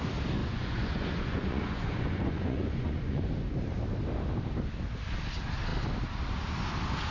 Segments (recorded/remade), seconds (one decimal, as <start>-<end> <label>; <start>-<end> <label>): 0.0-0.4 recorded; 0.4-3.3 remade; 3.3-7.1 recorded